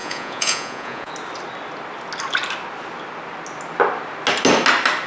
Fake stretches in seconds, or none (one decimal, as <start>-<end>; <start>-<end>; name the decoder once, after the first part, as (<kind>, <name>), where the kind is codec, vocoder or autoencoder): 0.0-1.1 (vocoder, Vocos)

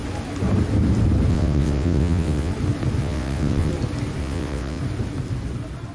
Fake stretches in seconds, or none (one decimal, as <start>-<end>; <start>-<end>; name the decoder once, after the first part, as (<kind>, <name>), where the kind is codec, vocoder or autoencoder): 1.3-2.5 (vocoder, WaveNeXt); 3.0-3.7; 4.2-4.8

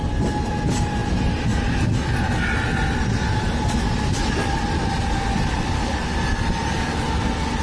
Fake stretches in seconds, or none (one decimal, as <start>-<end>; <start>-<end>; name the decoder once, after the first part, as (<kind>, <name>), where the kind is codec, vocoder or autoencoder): none

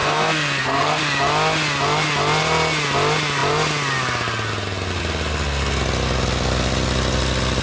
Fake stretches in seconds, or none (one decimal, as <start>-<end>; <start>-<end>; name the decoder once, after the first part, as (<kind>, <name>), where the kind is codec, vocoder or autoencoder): 0.0-1.0 (codec, SNAC)